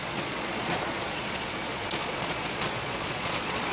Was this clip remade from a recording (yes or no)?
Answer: yes